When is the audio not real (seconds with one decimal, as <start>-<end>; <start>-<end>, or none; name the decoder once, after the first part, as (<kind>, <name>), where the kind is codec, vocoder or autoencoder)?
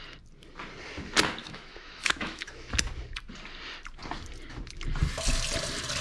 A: 1.4-2.7 (autoencoder, DAC-VAE)